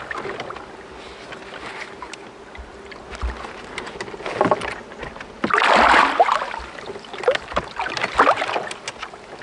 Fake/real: real